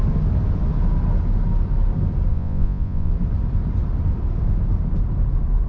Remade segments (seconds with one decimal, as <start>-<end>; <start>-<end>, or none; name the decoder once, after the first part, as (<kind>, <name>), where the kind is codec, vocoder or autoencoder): 2.3-3.1 (vocoder, Vocos)